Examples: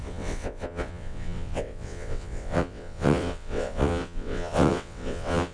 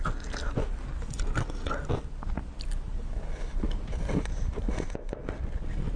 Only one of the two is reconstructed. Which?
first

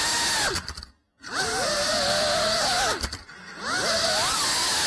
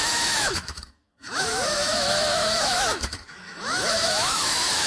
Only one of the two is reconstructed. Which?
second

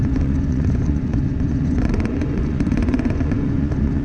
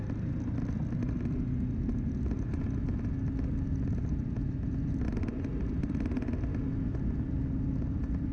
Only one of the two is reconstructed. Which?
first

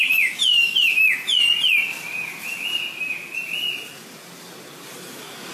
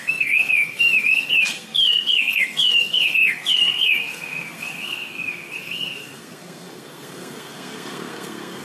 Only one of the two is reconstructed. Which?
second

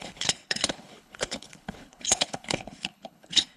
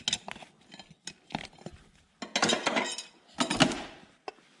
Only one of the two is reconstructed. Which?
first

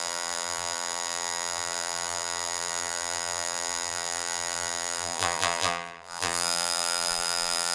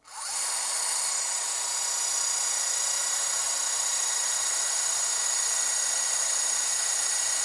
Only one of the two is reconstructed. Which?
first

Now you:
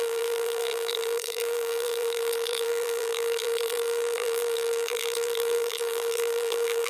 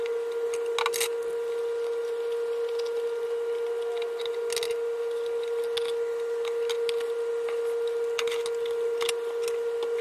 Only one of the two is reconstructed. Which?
first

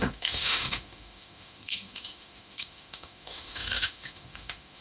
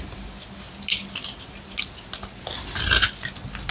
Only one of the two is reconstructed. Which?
first